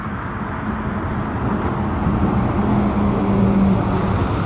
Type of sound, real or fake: real